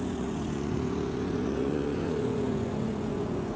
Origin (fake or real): fake